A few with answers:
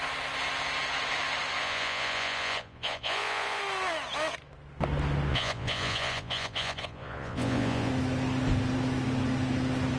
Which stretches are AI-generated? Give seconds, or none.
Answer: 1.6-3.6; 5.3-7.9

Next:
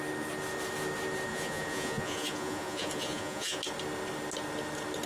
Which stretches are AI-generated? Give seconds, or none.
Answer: 1.3-3.6

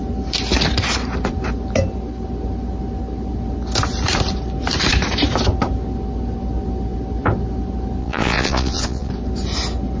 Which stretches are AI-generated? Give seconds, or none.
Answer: 8.0-9.1

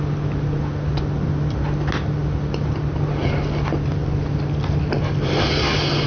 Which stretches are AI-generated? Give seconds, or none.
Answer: none

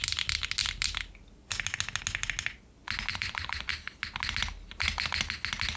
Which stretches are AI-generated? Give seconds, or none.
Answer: 3.1-3.7